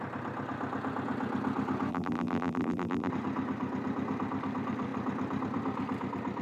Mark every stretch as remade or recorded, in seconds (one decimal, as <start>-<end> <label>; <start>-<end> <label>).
0.0-1.9 recorded; 1.9-3.1 remade; 3.1-6.4 recorded

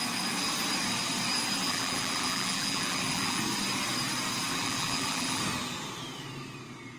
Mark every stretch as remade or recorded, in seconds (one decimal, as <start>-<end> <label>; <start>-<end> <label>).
0.0-1.6 recorded; 1.6-3.4 remade; 3.4-4.5 recorded; 4.5-5.4 remade; 5.4-7.0 recorded

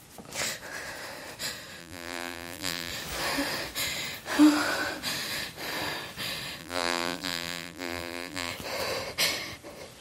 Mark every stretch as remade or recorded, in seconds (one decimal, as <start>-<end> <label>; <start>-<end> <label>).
0.0-1.8 recorded; 1.8-2.9 remade; 2.9-6.6 recorded; 6.6-8.5 remade; 8.5-10.0 recorded

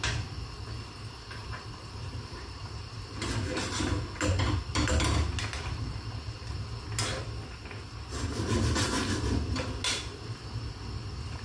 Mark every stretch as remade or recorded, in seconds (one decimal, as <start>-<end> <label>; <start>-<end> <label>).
0.0-1.4 recorded; 1.4-2.9 remade; 2.9-11.4 recorded

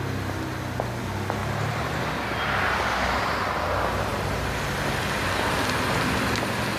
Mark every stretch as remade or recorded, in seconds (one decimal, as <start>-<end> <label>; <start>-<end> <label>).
0.0-1.4 recorded; 1.4-2.0 remade; 2.0-6.8 recorded

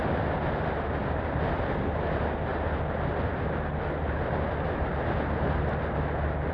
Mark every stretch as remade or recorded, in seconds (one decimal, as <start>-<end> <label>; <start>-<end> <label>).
0.0-2.5 remade; 2.5-6.5 recorded